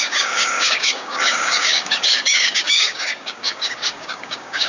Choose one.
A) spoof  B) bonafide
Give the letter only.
A